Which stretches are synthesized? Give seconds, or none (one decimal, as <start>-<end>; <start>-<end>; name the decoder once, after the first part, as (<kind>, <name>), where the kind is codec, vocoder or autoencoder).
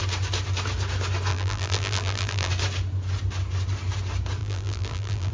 1.3-2.5 (vocoder, BigVGAN v2); 4.4-5.3